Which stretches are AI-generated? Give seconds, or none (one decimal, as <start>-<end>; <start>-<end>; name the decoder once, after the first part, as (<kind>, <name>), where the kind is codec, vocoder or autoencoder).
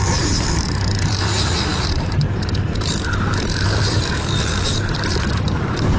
0.0-6.0 (vocoder, BigVGAN v2)